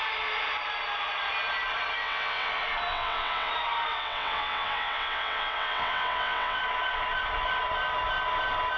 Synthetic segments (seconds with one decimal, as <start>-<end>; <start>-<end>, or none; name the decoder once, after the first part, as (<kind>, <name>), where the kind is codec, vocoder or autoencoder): 2.0-2.5 (vocoder, WaveNeXt); 2.9-3.5; 3.9-6.6